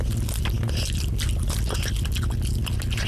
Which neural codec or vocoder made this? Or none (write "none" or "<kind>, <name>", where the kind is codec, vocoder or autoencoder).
none